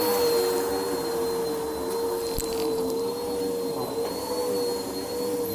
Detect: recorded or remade recorded